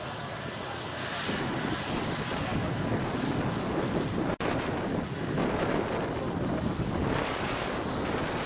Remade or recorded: recorded